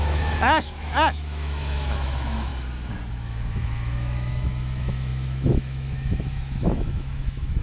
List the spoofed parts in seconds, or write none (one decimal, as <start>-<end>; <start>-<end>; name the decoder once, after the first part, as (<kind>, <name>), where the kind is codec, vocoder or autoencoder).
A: 0.0-2.5 (autoencoder, DAC-VAE); 3.1-7.6